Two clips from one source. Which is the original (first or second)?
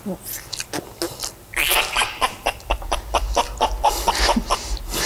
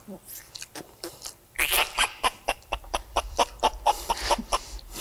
first